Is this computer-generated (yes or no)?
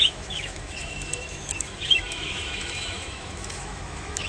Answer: yes